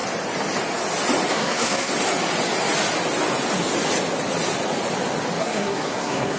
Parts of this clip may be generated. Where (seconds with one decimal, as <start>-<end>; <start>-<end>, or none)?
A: 1.3-1.9; 5.4-6.4